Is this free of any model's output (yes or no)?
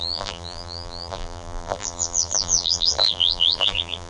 no